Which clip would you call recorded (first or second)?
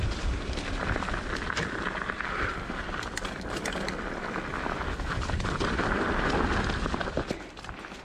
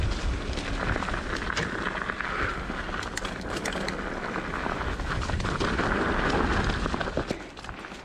second